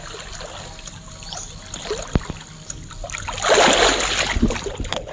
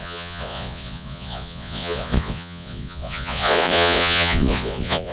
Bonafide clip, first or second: first